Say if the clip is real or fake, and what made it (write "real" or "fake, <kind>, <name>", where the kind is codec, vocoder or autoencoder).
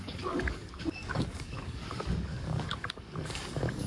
fake, codec, DAC